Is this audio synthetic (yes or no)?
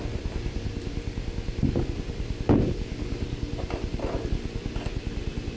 no